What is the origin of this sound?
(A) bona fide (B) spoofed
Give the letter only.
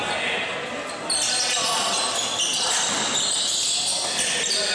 A